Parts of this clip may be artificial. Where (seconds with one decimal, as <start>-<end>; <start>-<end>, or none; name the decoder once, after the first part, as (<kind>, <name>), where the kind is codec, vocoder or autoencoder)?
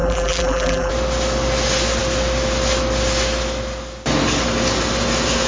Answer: 0.0-0.9 (vocoder, BigVGAN v2)